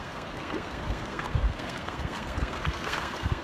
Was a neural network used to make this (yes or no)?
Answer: yes